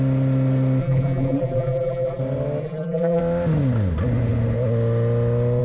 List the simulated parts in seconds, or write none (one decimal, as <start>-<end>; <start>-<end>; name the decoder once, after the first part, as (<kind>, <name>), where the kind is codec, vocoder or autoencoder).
0.8-2.2 (vocoder, BigVGAN v2); 2.6-3.2